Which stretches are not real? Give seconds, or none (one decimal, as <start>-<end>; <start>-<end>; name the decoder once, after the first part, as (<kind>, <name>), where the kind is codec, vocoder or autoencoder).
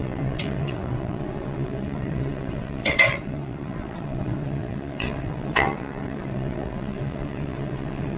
0.0-8.2 (vocoder, WaveNeXt)